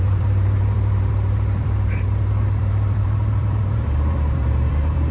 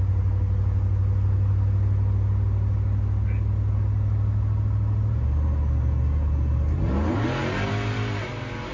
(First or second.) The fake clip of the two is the first